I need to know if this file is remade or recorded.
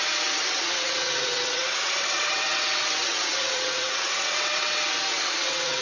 remade